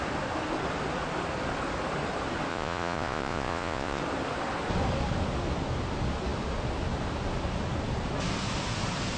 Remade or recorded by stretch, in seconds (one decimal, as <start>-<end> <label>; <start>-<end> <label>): 0.0-2.5 recorded; 2.5-4.0 remade; 4.0-9.2 recorded